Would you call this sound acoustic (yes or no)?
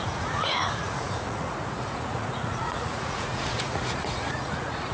no